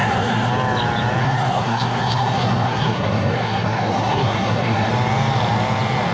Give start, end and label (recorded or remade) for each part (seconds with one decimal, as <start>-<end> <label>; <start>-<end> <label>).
0.0-0.5 remade; 0.5-1.2 recorded; 1.2-4.9 remade; 4.9-6.1 recorded